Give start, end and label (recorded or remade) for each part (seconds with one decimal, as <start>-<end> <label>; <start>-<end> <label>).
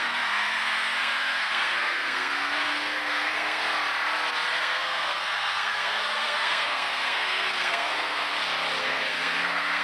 0.0-3.6 remade; 3.6-4.6 recorded; 4.6-8.3 remade; 8.3-8.8 recorded; 8.8-9.8 remade